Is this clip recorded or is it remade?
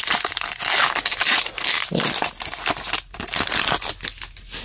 recorded